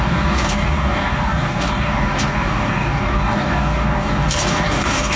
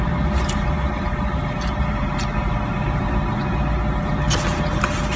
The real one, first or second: second